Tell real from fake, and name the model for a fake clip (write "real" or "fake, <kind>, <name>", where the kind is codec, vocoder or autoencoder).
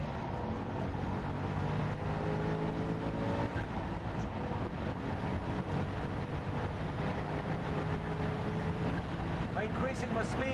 real